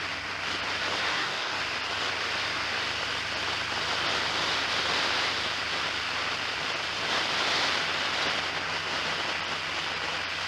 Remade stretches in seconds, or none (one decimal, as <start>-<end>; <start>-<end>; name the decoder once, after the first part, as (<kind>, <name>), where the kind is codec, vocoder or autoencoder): 1.1-1.6 (codec, DAC)

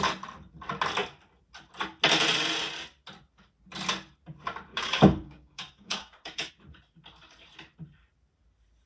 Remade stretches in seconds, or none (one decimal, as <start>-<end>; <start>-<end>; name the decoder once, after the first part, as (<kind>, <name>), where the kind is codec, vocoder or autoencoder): 4.7-6.5 (codec, DAC)

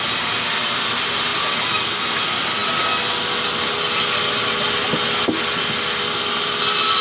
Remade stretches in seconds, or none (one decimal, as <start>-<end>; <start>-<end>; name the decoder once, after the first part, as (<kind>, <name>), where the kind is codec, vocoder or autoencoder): none

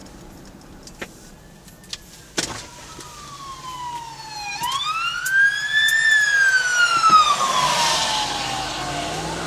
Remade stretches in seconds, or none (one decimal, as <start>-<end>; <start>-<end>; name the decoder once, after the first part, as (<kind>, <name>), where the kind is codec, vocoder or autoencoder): none

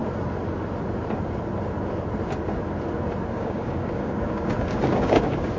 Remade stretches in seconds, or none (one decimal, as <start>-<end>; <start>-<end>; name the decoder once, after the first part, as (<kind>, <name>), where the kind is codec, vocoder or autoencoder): 3.3-5.6 (codec, DAC)

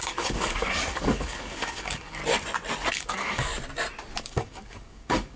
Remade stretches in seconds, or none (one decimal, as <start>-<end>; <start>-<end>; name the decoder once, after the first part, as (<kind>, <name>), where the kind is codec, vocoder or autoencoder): 0.0-2.2 (codec, DAC); 2.9-3.5; 4.2-5.4

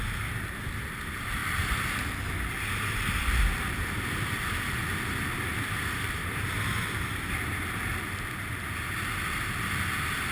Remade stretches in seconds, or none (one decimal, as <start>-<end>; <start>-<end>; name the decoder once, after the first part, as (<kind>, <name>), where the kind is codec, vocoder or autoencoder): none